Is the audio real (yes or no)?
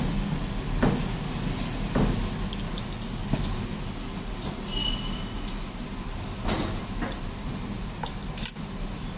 yes